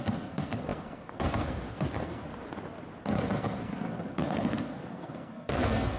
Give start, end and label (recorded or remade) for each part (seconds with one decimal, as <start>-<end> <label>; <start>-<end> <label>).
0.0-2.3 remade; 2.3-3.0 recorded; 3.0-6.0 remade

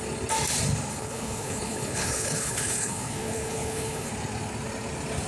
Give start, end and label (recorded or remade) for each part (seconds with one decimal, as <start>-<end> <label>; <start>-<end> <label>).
0.0-0.9 recorded; 0.9-4.1 remade; 4.1-5.3 recorded

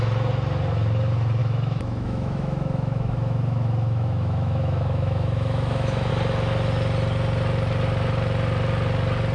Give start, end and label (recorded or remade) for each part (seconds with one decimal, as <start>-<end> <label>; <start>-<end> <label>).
0.0-1.4 recorded; 1.4-6.1 remade; 6.1-9.3 recorded

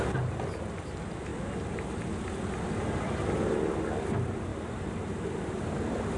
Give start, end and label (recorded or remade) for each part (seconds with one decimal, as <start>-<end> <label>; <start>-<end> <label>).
0.0-1.3 recorded; 1.3-2.0 remade; 2.0-4.5 recorded; 4.5-6.2 remade